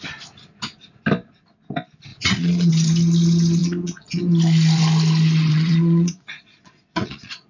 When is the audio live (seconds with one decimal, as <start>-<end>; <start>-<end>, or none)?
0.0-2.1; 2.7-3.6; 4.2-5.5